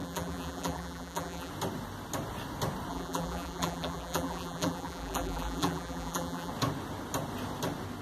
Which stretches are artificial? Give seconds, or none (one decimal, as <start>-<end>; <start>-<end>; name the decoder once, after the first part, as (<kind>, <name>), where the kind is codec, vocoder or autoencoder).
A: 0.0-1.5 (vocoder, BigVGAN v2); 2.9-6.5